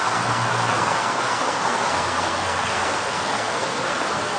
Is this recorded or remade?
remade